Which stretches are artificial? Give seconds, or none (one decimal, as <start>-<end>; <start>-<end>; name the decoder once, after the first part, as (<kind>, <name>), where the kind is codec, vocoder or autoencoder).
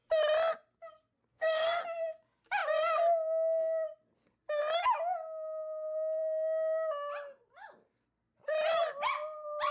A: 1.3-1.8 (codec, SNAC)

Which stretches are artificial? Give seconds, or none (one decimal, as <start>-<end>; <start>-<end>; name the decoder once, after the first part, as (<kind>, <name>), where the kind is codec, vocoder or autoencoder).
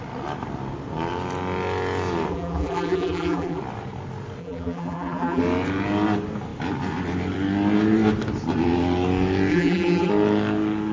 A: 2.3-3.6 (vocoder, BigVGAN v2); 4.4-5.4; 9.5-10.1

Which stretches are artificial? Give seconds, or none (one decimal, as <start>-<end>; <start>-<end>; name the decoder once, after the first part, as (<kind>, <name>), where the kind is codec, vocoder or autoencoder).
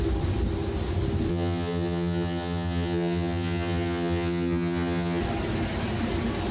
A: 1.3-5.2 (vocoder, HiFi-GAN)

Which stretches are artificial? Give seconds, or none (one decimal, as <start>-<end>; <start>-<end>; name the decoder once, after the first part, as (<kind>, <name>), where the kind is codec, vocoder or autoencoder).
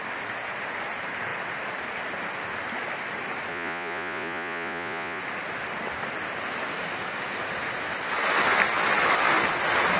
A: 3.5-5.2 (vocoder, Vocos)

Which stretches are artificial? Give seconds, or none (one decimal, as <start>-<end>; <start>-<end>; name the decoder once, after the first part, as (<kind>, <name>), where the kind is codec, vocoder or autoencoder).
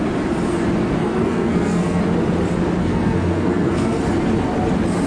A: 1.0-2.0 (codec, SNAC); 2.8-4.0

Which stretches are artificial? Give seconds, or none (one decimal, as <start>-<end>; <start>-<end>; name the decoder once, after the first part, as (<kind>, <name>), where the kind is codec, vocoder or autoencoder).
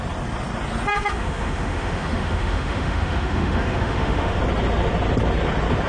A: 0.9-4.4 (autoencoder, DAC-VAE)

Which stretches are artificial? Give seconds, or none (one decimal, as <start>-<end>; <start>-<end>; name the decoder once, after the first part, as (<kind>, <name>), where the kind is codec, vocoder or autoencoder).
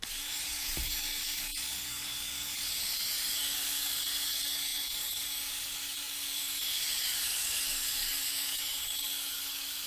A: 0.0-9.9 (codec, DAC)